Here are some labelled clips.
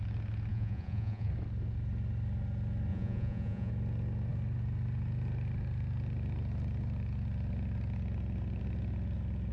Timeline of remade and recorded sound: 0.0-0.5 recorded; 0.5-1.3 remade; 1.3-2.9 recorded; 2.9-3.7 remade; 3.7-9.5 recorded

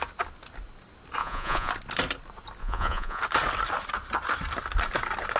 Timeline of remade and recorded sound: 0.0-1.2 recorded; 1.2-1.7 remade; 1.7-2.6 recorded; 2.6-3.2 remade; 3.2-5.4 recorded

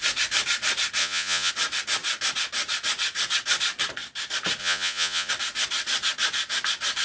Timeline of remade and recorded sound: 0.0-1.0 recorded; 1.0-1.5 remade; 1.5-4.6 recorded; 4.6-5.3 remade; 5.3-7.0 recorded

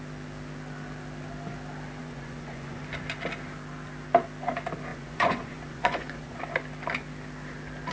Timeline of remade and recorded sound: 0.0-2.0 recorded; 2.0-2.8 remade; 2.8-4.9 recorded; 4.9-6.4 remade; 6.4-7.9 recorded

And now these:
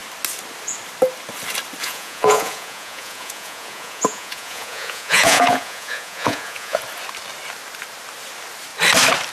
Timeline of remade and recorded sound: 0.0-1.8 recorded; 1.8-6.8 remade; 6.8-9.3 recorded

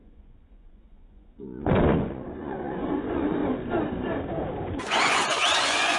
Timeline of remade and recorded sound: 0.0-3.4 remade; 3.4-4.8 recorded; 4.8-6.0 remade